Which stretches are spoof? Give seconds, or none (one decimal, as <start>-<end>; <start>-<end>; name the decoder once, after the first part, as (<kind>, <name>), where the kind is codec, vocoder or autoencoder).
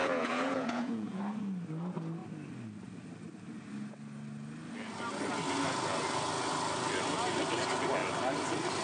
0.0-1.2 (vocoder, Vocos)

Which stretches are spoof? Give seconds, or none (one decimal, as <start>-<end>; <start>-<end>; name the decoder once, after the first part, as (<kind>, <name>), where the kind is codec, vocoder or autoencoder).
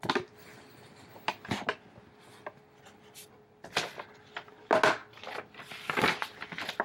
none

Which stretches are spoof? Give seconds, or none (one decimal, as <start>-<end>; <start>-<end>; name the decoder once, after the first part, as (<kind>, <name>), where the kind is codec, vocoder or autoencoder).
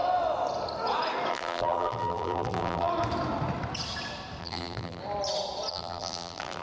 1.3-2.9 (vocoder, BigVGAN v2); 4.4-5.0; 5.7-6.6